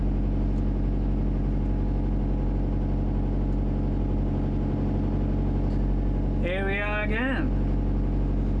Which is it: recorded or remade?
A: recorded